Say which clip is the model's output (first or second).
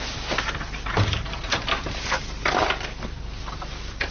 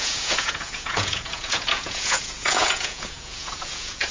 second